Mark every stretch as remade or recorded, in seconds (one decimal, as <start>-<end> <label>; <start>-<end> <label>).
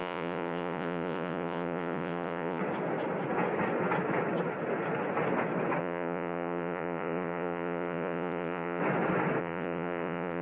0.0-2.6 remade; 2.6-5.8 recorded; 5.8-8.8 remade; 8.8-9.4 recorded; 9.4-10.4 remade